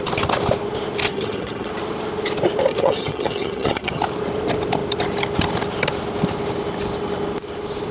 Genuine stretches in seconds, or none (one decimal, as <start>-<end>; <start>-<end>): 0.0-1.1; 1.7-2.7; 4.0-7.9